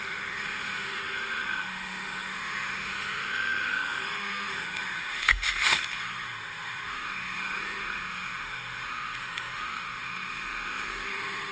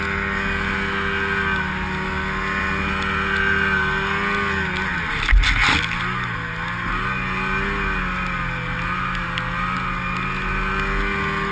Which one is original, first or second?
second